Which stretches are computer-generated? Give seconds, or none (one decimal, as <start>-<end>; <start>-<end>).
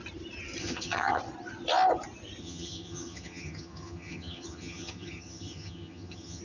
0.6-1.2; 2.4-6.4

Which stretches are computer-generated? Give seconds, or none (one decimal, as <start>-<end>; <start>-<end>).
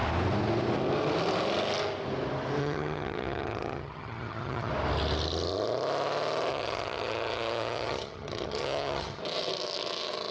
2.6-4.7; 6.5-9.2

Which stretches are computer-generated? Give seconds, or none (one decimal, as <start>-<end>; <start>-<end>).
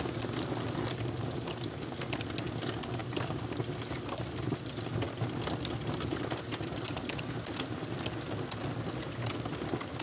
none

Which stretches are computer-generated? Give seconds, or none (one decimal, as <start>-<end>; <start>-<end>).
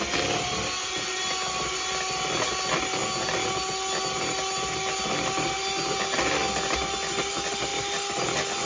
none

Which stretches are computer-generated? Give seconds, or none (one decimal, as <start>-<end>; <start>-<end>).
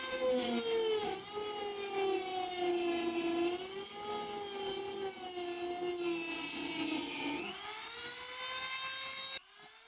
none